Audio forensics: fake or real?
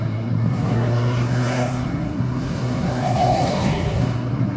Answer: fake